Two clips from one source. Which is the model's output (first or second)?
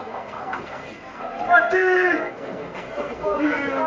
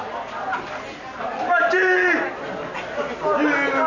first